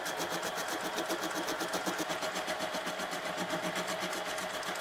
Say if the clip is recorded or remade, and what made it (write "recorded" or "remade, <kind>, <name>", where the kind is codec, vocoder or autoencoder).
recorded